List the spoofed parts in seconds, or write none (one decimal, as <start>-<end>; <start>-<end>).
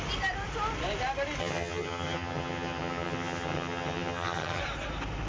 1.4-4.6